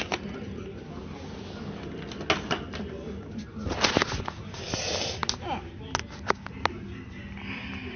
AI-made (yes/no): no